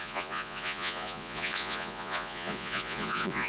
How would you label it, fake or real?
fake